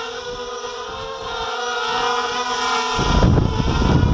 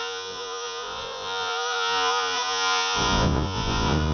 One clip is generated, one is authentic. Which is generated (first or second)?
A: second